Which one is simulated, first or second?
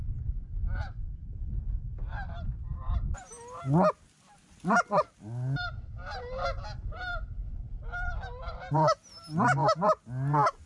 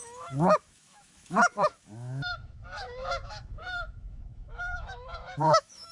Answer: second